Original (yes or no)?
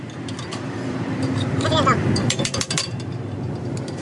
no